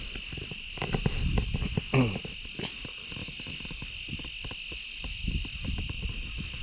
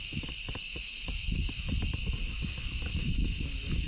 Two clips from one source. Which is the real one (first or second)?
first